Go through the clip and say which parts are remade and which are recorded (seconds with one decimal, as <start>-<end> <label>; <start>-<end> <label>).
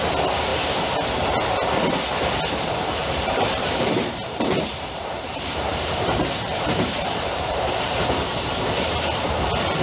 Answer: 0.0-0.5 recorded; 0.5-1.3 remade; 1.3-3.0 recorded; 3.0-7.9 remade; 7.9-9.8 recorded